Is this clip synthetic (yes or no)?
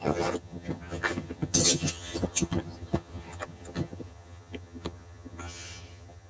yes